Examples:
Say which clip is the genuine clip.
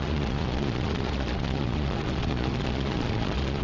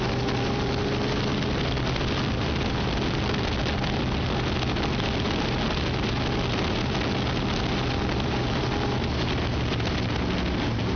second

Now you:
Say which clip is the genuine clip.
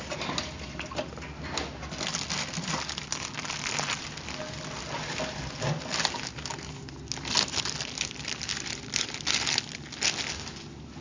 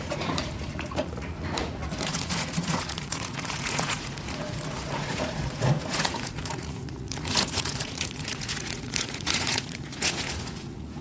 first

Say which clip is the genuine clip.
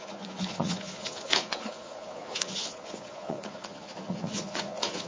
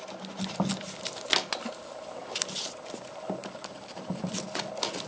second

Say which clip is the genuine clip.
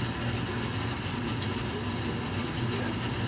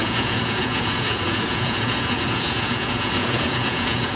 first